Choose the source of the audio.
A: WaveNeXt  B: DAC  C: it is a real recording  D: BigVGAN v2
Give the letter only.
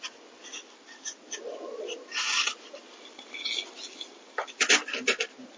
C